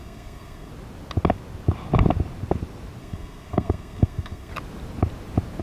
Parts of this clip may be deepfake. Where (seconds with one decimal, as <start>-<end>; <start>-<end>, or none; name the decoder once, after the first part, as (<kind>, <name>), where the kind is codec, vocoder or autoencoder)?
0.0-0.7 (codec, SNAC); 3.0-4.5